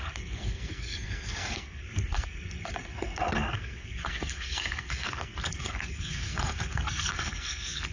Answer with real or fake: fake